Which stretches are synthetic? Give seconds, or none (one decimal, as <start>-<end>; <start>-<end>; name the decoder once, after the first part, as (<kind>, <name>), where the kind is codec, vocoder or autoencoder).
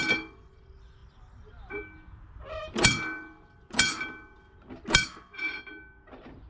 none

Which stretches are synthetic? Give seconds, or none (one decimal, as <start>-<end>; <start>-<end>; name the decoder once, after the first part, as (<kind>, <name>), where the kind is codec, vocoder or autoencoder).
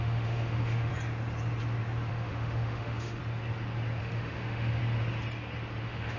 0.0-0.9 (autoencoder, DAC-VAE); 2.1-3.2; 4.0-4.8; 5.8-6.2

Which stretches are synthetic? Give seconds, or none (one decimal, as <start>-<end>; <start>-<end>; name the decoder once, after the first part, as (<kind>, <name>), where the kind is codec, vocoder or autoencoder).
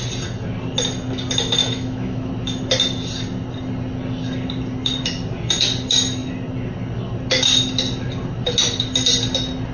1.6-2.3 (autoencoder, DAC-VAE)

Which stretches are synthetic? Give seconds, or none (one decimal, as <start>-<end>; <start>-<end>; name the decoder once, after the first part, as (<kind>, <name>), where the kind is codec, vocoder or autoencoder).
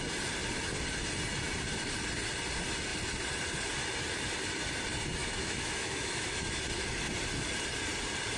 5.2-6.6 (autoencoder, DAC-VAE)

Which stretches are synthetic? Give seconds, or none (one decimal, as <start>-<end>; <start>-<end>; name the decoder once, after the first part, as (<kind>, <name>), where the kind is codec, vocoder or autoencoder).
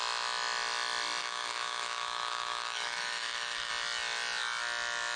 1.2-3.7 (autoencoder, DAC-VAE)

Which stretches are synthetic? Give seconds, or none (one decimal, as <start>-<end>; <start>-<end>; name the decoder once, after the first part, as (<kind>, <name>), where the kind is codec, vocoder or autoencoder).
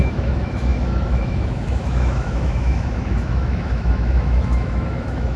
0.0-5.4 (autoencoder, DAC-VAE)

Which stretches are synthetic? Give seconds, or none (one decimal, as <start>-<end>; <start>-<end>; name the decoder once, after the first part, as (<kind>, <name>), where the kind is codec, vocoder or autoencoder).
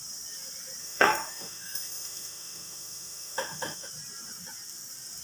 0.8-3.9 (autoencoder, DAC-VAE)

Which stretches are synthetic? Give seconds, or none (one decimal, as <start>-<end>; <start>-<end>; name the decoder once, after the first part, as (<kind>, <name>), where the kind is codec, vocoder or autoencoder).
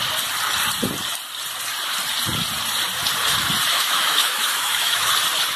3.7-5.1 (autoencoder, DAC-VAE)